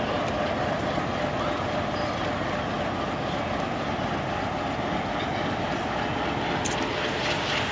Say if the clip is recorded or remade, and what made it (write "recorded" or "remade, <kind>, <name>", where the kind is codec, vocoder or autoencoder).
recorded